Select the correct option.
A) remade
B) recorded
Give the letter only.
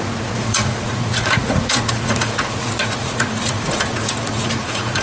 A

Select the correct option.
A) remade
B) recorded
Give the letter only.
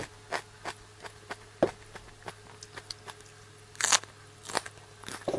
B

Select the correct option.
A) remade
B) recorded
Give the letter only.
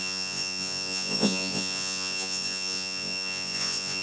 A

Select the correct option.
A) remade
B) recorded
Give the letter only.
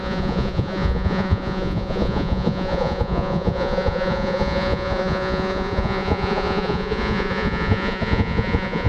A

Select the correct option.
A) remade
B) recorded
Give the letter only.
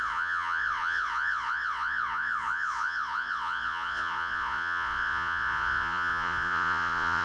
A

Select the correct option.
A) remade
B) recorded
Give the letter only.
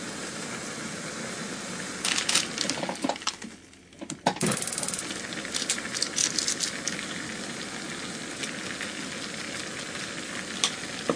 B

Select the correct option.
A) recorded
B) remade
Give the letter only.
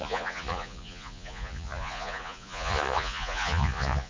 B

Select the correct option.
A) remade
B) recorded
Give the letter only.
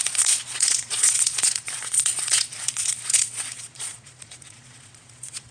A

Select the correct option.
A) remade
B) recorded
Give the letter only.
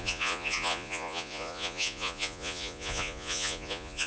A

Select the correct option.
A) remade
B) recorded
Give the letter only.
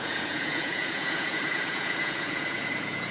A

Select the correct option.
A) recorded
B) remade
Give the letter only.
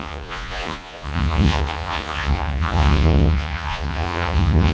B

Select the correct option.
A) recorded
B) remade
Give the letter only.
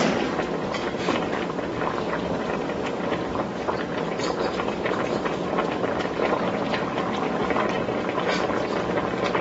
A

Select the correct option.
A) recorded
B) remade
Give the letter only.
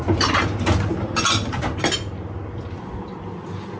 A